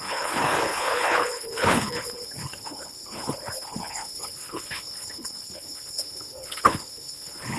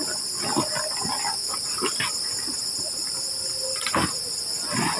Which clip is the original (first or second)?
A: second